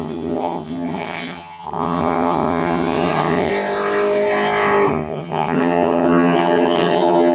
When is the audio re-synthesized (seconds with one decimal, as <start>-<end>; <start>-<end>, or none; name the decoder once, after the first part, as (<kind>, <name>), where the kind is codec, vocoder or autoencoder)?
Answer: 0.0-3.5 (vocoder, HiFi-GAN); 4.9-7.3